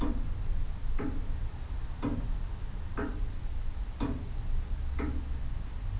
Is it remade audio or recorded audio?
recorded